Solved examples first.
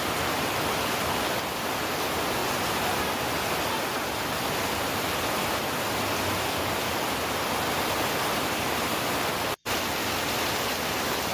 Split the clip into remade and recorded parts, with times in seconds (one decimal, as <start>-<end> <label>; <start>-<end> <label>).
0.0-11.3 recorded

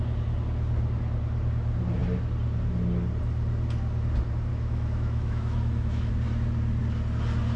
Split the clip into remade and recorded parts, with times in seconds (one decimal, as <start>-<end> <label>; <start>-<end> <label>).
0.0-4.5 recorded; 4.5-6.1 remade; 6.1-7.6 recorded

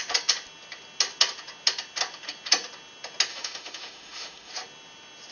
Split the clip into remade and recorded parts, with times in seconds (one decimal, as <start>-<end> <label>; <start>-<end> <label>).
0.0-3.3 recorded; 3.3-4.5 remade; 4.5-5.3 recorded

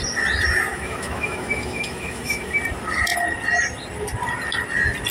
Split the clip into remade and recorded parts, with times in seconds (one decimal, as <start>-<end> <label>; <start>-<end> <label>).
0.0-0.7 recorded; 0.7-2.6 remade; 2.6-5.1 recorded

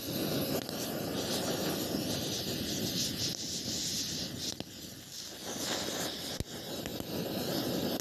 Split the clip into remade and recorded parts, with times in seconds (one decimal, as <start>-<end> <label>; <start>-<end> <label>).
0.0-8.0 recorded

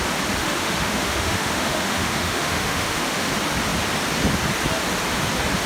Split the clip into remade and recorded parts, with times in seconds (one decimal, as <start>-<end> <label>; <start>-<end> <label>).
0.0-0.4 recorded; 0.4-3.3 remade; 3.3-5.7 recorded

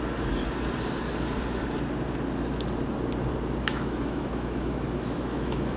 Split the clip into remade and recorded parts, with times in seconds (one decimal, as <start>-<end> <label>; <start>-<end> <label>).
0.0-3.6 recorded; 3.6-5.8 remade

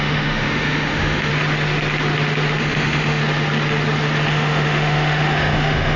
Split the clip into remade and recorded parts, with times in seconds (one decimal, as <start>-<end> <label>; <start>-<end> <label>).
0.0-1.3 remade; 1.3-2.6 recorded; 2.6-3.2 remade; 3.2-4.3 recorded; 4.3-6.0 remade